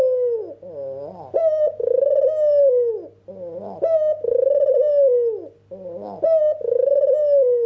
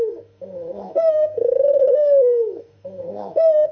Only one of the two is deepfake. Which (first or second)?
second